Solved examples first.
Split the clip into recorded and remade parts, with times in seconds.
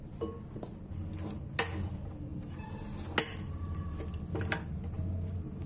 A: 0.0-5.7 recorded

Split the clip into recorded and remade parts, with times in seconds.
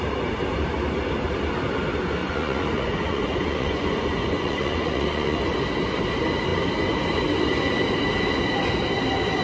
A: 0.0-2.2 recorded; 2.2-5.4 remade; 5.4-9.4 recorded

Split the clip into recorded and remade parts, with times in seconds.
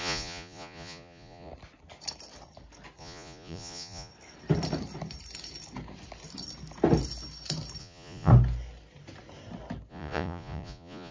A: 0.0-1.5 remade; 1.5-3.0 recorded; 3.0-4.1 remade; 4.1-7.8 recorded; 7.8-8.3 remade; 8.3-9.9 recorded; 9.9-11.1 remade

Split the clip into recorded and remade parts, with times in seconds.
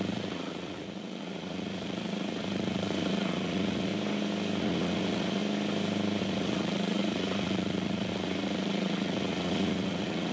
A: 0.0-3.9 remade; 3.9-4.6 recorded; 4.6-5.4 remade; 5.4-6.2 recorded; 6.2-10.3 remade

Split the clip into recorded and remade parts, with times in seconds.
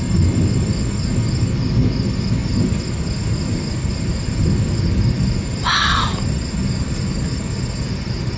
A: 0.0-8.4 recorded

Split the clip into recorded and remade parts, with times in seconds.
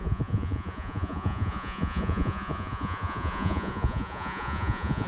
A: 0.0-5.1 remade